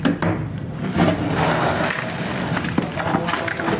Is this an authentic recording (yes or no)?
yes